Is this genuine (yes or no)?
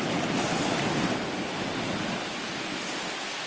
yes